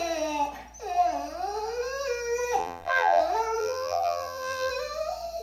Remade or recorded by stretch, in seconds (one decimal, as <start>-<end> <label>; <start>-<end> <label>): 0.0-2.6 recorded; 2.6-3.2 remade; 3.2-3.6 recorded; 3.6-4.7 remade; 4.7-5.4 recorded